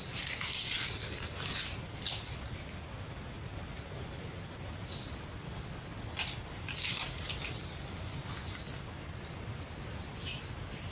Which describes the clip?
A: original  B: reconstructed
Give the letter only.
A